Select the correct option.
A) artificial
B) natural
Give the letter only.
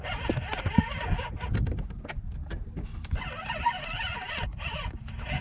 B